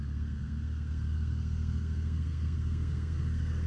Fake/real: fake